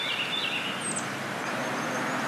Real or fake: real